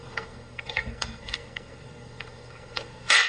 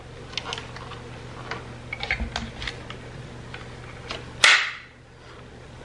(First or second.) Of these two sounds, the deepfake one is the first